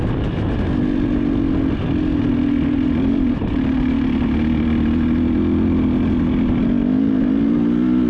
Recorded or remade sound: recorded